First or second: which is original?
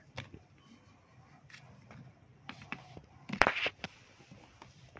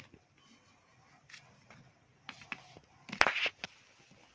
second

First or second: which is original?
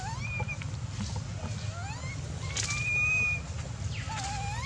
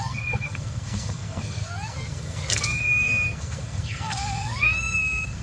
first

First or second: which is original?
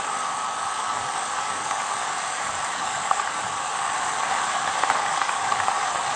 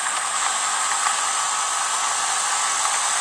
second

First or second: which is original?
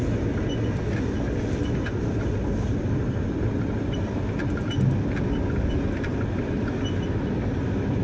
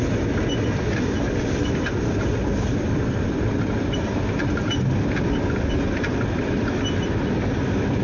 first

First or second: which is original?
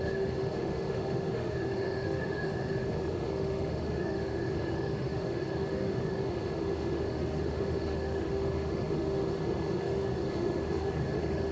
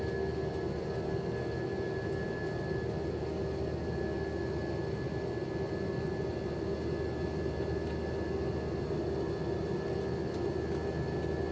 second